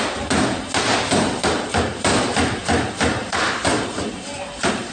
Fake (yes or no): no